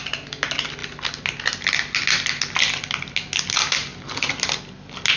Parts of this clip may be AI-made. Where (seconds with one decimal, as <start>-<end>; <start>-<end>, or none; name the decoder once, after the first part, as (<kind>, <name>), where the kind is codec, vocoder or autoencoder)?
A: none